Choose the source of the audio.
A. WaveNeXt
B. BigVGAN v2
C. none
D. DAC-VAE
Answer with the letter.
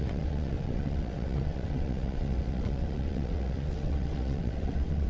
A